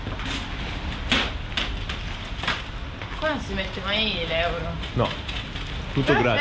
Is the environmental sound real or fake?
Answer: real